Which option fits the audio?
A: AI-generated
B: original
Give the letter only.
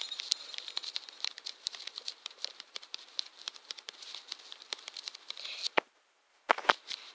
A